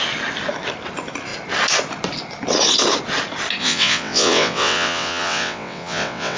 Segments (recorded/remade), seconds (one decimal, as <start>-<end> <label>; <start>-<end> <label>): 0.0-3.6 recorded; 3.6-6.4 remade